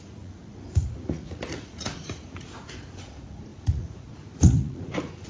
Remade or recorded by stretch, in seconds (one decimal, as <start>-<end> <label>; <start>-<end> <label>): 0.0-5.3 remade